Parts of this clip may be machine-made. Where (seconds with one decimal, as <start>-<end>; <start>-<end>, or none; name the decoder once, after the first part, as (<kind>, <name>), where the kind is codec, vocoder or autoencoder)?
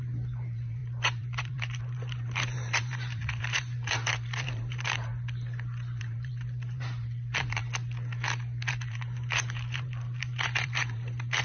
0.0-5.1 (vocoder, BigVGAN v2); 6.0-7.6; 8.7-11.4